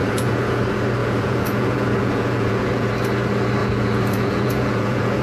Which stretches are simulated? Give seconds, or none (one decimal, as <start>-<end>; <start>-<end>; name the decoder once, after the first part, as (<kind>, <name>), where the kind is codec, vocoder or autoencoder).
0.0-0.6 (vocoder, Vocos); 1.0-2.9; 3.6-5.2